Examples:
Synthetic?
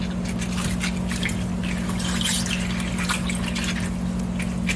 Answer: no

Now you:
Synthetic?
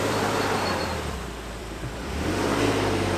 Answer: yes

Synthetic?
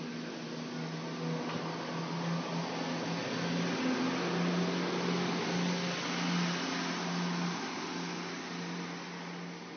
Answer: no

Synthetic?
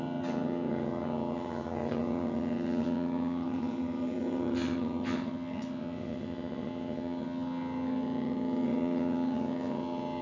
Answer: yes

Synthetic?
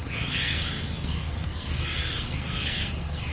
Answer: yes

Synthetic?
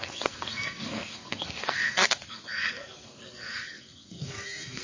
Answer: yes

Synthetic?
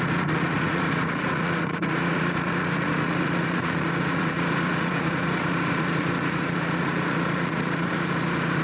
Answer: yes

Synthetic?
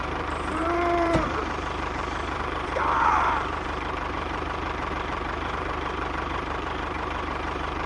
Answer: yes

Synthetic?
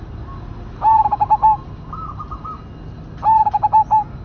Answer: no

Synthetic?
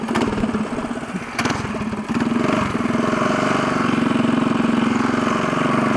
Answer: no